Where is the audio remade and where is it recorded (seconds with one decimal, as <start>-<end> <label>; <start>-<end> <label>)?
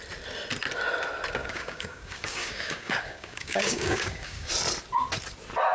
0.0-1.4 recorded; 1.4-4.5 remade; 4.5-5.7 recorded